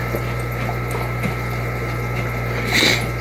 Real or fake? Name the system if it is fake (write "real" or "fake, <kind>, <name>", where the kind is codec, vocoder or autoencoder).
real